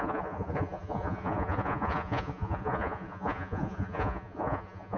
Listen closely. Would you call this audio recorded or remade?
remade